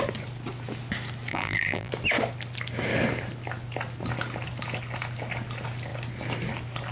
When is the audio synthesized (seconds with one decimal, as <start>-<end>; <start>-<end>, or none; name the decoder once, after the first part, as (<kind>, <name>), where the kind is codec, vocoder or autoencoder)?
1.3-1.9 (vocoder, BigVGAN v2)